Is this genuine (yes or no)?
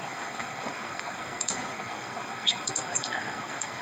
no